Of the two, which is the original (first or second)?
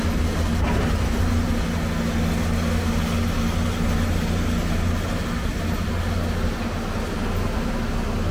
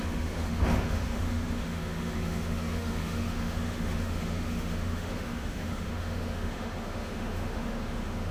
first